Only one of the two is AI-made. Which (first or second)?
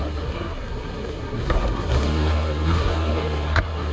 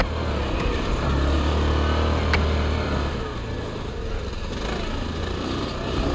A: first